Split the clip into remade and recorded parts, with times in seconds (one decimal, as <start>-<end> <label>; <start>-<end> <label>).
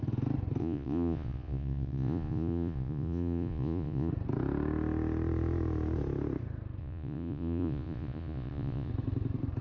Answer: 0.0-0.6 recorded; 0.6-4.1 remade; 4.1-6.8 recorded; 6.8-8.9 remade; 8.9-9.6 recorded